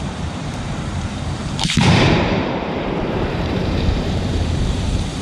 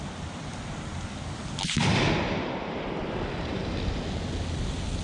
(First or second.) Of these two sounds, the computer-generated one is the first